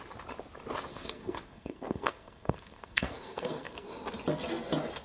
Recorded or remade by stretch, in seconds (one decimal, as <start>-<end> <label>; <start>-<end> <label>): 0.0-0.9 recorded; 0.9-3.9 remade; 3.9-5.0 recorded